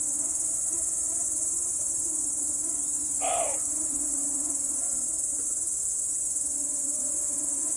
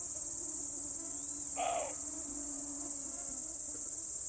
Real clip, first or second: second